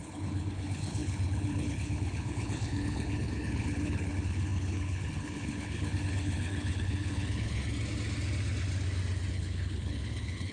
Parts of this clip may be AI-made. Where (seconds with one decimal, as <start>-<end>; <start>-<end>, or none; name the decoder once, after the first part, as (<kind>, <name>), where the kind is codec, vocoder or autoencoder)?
0.0-7.6 (codec, HILCodec); 9.3-10.5